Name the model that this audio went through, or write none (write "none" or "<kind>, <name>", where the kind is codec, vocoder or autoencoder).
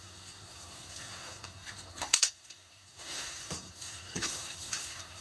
codec, SNAC